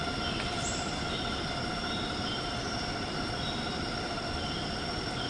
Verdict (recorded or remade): recorded